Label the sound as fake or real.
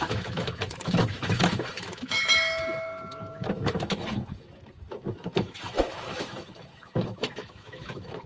fake